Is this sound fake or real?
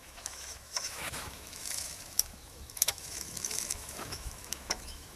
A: fake